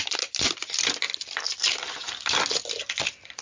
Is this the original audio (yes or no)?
yes